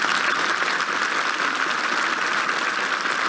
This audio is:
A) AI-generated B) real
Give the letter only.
B